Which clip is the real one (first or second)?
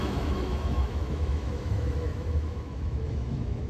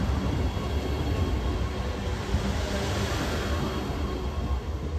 second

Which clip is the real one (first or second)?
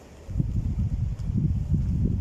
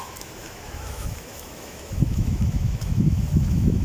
first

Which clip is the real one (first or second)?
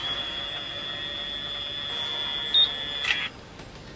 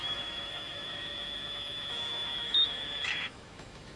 first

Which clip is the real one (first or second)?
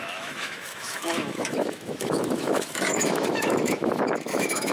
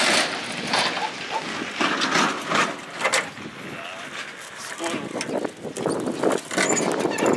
second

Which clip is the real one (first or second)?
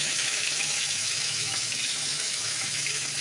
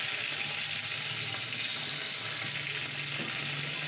second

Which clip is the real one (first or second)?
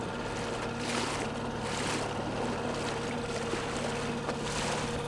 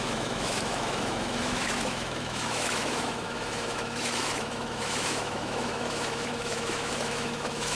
first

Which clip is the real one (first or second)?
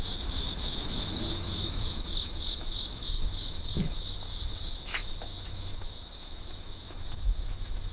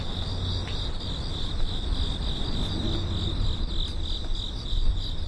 second